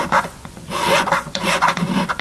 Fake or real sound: fake